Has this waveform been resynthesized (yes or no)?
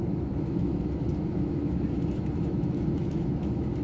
yes